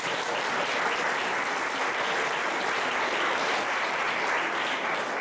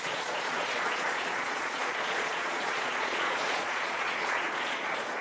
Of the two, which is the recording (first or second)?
first